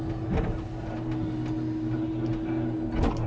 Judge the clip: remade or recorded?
recorded